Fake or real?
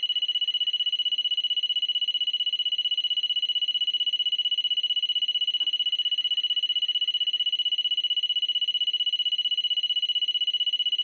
real